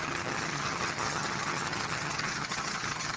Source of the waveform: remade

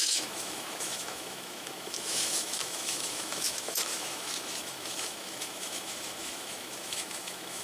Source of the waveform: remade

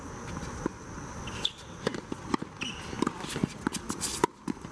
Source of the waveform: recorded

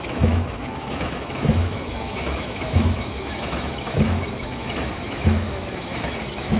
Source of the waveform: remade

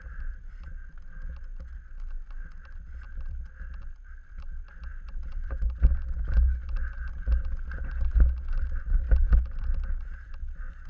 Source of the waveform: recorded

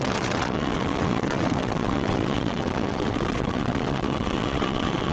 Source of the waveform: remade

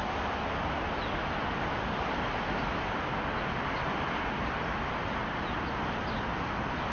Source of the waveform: recorded